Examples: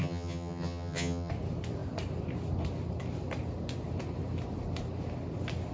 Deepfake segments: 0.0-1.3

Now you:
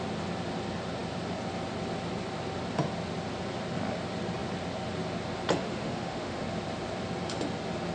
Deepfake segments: 5.6-6.4

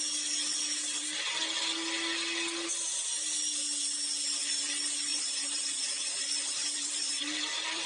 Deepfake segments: 5.1-7.9

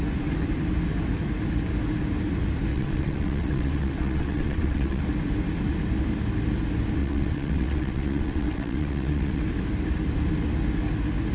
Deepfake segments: 2.7-5.0; 7.0-9.4

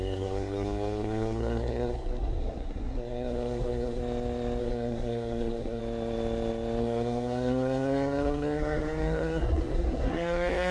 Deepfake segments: 0.0-4.0; 4.6-5.8; 6.8-10.7

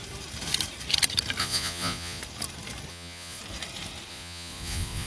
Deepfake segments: 1.4-2.2; 2.9-3.4; 4.1-5.1

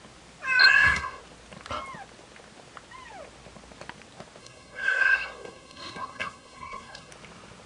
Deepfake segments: 0.6-1.2; 4.4-7.1